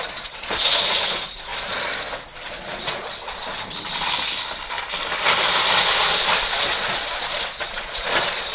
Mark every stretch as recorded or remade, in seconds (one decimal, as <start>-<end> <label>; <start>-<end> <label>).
0.0-1.5 remade; 1.5-2.5 recorded; 2.5-3.4 remade; 3.4-6.7 recorded; 6.7-8.5 remade